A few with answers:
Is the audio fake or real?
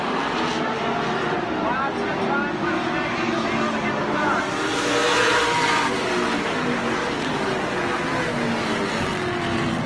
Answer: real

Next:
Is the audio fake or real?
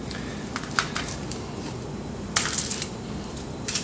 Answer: fake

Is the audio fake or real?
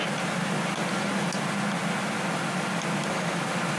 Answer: real